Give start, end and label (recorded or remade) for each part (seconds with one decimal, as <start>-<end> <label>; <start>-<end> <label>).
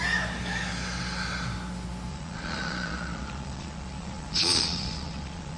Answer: 0.0-2.1 recorded; 2.1-5.6 remade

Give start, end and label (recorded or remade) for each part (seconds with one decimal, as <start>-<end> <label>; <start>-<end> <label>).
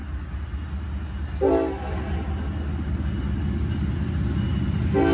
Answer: 0.0-5.1 recorded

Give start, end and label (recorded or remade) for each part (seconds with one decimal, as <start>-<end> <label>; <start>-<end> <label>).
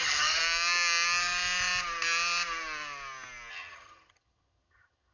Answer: 0.0-0.4 remade; 0.4-3.5 recorded; 3.5-5.1 remade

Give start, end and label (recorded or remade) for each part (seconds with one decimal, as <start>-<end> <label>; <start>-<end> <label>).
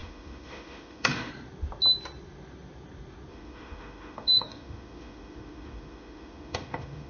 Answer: 0.0-1.3 remade; 1.3-3.3 recorded; 3.3-7.1 remade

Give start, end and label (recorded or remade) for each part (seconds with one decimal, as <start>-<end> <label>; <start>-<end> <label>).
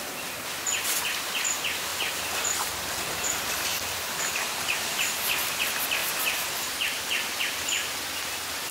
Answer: 0.0-8.7 remade